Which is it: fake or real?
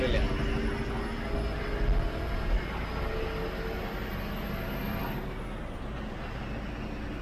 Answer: real